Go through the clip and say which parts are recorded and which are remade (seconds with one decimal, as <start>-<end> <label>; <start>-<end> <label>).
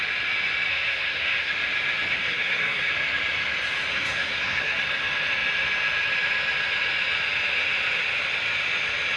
0.0-0.7 recorded; 0.7-1.5 remade; 1.5-2.1 recorded; 2.1-2.9 remade; 2.9-3.9 recorded; 3.9-4.8 remade; 4.8-9.2 recorded